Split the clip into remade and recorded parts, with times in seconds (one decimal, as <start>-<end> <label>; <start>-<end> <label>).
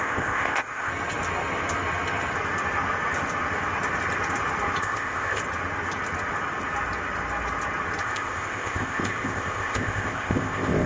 0.0-0.9 remade; 0.9-4.8 recorded; 4.8-5.4 remade; 5.4-8.0 recorded; 8.0-10.9 remade